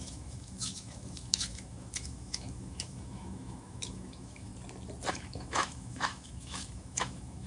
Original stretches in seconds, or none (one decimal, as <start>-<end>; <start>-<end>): 4.5-5.1